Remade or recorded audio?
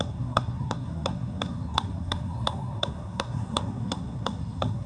remade